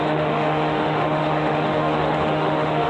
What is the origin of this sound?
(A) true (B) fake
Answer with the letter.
B